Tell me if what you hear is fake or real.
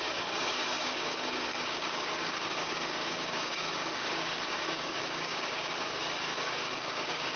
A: fake